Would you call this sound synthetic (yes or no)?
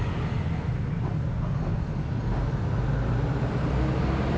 no